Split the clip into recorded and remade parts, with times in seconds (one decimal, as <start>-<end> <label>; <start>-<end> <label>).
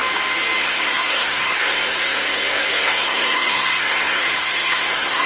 0.0-0.6 recorded; 0.6-5.3 remade